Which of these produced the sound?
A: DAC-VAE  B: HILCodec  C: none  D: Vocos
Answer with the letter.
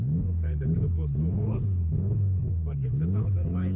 B